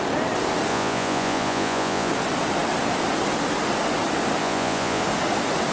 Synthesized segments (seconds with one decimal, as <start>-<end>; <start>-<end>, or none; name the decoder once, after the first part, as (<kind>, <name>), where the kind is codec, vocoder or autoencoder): 0.7-2.1 (vocoder, Vocos); 4.4-5.0